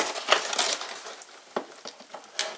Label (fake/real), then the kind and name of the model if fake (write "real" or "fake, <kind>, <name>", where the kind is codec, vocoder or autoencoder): real